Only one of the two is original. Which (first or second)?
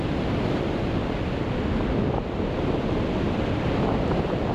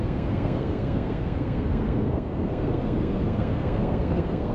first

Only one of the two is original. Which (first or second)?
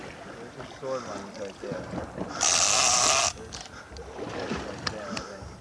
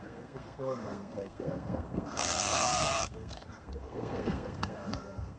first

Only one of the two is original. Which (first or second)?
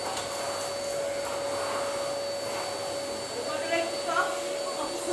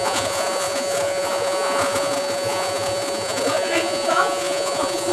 first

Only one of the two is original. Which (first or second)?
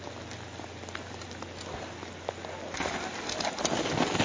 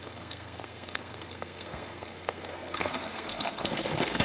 first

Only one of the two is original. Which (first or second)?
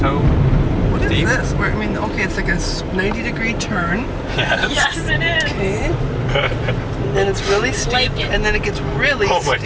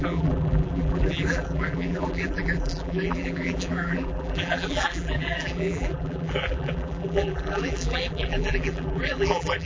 first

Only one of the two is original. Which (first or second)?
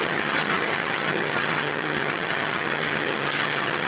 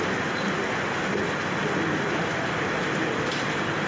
second